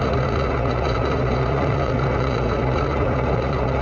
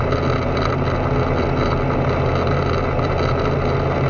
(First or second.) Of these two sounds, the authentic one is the second